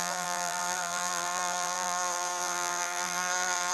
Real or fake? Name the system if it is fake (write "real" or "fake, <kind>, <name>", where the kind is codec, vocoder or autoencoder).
fake, vocoder, BigVGAN v2